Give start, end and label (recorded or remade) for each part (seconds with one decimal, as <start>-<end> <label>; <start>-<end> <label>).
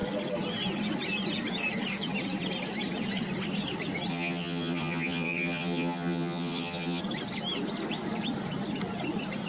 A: 0.0-4.1 recorded; 4.1-7.0 remade; 7.0-9.5 recorded